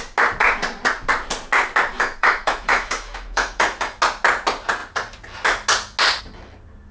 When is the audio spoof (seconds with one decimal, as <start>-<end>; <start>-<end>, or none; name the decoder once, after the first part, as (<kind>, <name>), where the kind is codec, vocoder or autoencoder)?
1.9-4.0 (autoencoder, DAC-VAE)